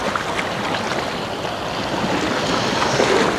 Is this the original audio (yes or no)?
yes